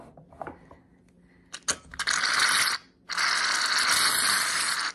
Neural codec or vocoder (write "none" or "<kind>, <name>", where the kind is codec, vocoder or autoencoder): none